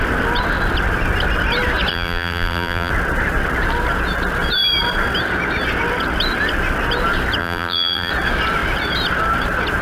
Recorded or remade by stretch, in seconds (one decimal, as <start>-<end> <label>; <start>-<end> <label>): 0.0-1.9 recorded; 1.9-2.9 remade; 2.9-7.4 recorded; 7.4-8.1 remade; 8.1-9.8 recorded